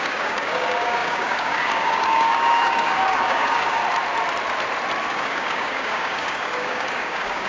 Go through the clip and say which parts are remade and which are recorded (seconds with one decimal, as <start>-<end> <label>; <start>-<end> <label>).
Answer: 0.0-3.8 remade; 3.8-5.1 recorded; 5.1-7.5 remade